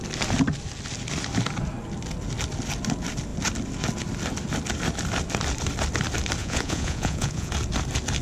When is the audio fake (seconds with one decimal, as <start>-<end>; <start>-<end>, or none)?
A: 6.4-7.5